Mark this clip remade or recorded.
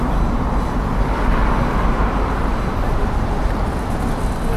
recorded